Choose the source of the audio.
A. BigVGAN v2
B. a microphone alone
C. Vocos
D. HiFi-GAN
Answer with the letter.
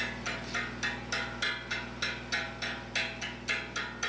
B